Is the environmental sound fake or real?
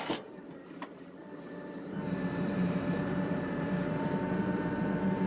fake